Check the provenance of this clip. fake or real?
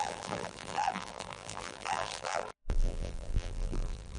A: fake